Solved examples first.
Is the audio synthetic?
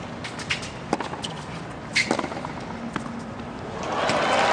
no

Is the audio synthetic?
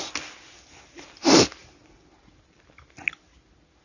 no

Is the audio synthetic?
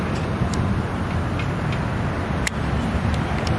no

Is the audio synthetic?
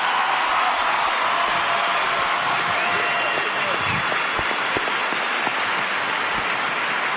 no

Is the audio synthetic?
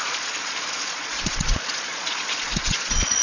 yes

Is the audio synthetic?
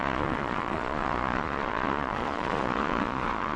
yes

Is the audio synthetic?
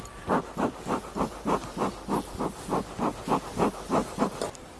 no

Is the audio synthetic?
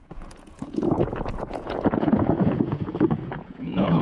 yes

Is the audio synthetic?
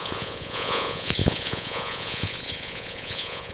yes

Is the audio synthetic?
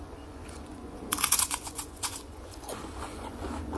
yes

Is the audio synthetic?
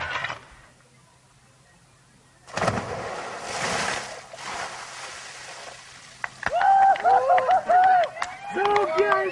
no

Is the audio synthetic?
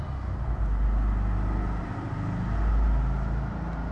no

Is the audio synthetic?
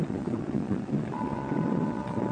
yes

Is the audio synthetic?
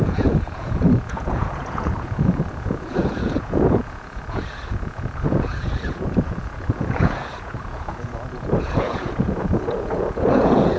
yes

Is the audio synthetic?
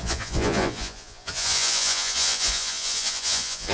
yes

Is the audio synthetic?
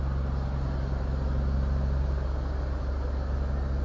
no